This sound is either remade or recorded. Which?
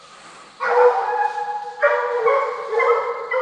recorded